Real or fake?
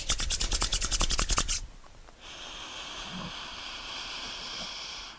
real